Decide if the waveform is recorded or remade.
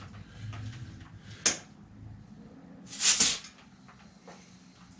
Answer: recorded